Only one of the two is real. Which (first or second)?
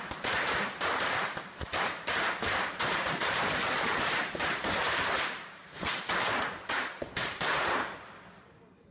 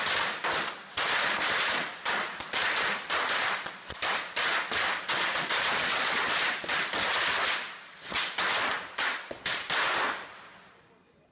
second